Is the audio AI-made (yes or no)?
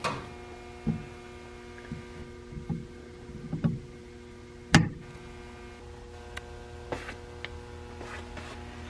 no